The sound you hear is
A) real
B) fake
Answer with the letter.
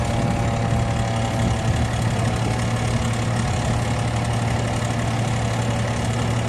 A